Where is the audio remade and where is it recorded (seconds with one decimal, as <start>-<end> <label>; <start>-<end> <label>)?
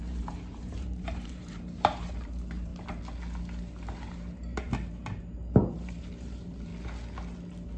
0.0-2.7 remade; 2.7-4.3 recorded; 4.3-6.7 remade; 6.7-7.8 recorded